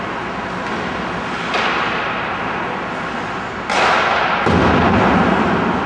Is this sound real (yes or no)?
yes